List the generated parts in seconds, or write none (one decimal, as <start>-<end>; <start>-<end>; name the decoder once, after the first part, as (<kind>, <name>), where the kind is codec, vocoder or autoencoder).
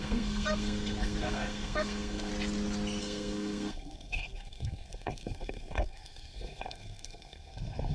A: 0.0-2.3 (codec, SNAC); 3.0-7.9